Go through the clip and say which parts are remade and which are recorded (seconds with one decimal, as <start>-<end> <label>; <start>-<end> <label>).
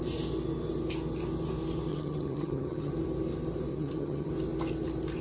0.0-1.9 recorded; 1.9-2.9 remade; 2.9-3.7 recorded; 3.7-4.3 remade; 4.3-5.2 recorded